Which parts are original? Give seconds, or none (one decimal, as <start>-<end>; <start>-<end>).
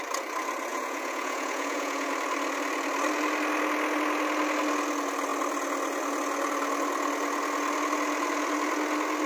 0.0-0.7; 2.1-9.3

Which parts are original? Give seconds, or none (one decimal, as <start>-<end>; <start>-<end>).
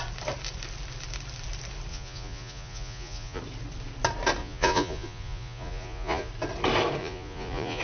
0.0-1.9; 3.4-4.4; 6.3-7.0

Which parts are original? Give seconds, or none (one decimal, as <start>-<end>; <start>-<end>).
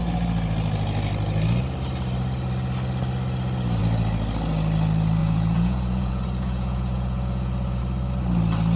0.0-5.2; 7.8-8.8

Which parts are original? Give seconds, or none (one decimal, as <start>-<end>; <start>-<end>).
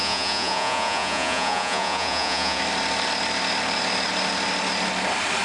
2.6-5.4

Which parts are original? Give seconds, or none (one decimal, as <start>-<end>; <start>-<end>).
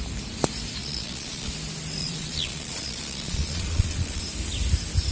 0.0-0.8; 1.5-2.0; 4.2-5.1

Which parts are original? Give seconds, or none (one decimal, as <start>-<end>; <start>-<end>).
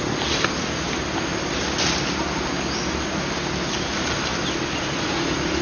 0.0-5.6